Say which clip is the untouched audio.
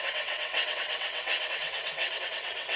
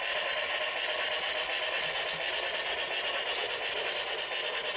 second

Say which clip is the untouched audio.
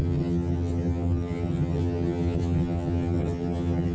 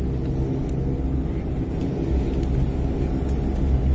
second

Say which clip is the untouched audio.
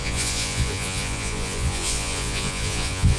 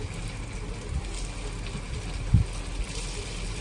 second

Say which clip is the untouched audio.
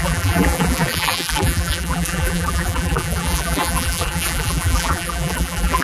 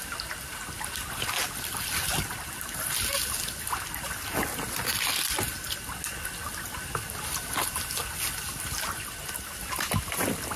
second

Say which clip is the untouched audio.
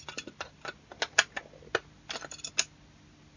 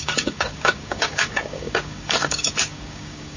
first